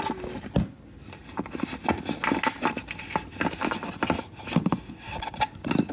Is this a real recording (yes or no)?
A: yes